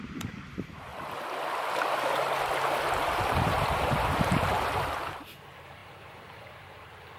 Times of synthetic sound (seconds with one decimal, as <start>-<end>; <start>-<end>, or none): 0.0-0.9; 2.8-7.2